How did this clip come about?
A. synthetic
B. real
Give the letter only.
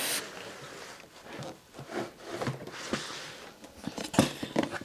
B